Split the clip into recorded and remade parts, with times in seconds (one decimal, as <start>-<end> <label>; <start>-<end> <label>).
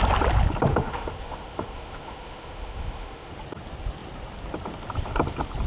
0.0-0.7 recorded; 0.7-3.3 remade; 3.3-5.7 recorded